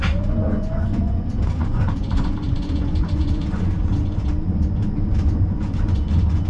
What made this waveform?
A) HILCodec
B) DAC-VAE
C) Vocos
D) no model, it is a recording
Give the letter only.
C